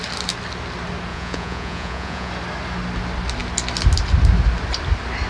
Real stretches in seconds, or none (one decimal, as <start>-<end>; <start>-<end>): 0.0-1.1; 2.3-5.3